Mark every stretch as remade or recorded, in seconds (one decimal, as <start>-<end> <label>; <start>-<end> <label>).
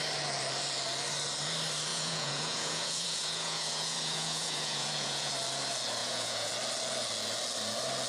0.0-1.9 recorded; 1.9-5.3 remade; 5.3-6.0 recorded; 6.0-6.5 remade; 6.5-8.1 recorded